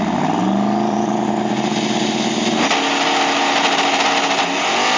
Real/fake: real